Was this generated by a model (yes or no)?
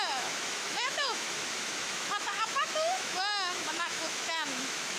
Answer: yes